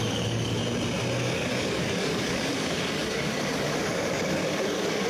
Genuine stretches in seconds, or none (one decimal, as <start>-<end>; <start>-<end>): 0.6-1.2